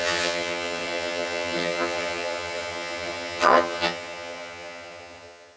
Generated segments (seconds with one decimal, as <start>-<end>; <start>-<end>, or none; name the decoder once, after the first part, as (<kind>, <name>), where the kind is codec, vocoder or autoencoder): 0.0-5.6 (vocoder, HiFi-GAN)